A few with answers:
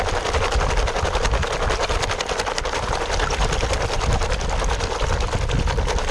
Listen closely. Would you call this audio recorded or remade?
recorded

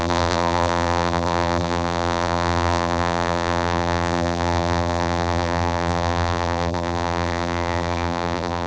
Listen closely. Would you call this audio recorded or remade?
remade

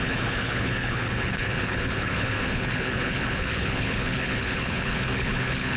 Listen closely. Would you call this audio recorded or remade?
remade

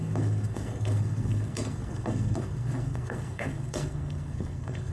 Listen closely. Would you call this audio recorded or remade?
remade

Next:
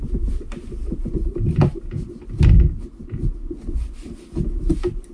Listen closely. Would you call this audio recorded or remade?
recorded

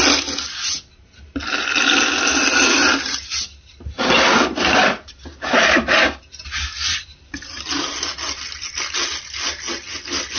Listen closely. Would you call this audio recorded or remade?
recorded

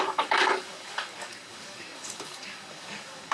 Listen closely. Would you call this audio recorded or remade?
remade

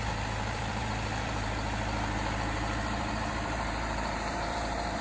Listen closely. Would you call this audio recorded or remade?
remade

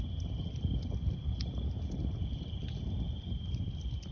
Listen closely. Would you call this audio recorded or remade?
recorded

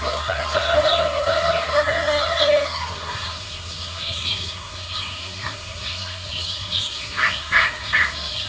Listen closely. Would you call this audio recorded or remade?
remade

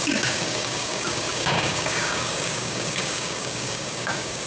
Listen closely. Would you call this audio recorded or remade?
remade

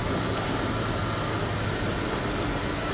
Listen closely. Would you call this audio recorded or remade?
recorded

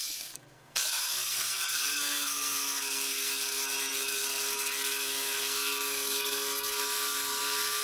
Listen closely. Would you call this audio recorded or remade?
remade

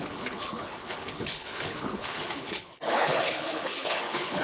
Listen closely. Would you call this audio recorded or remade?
remade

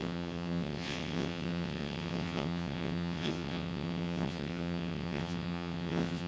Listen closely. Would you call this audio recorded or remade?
remade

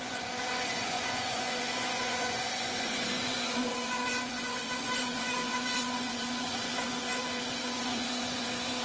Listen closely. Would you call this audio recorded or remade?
remade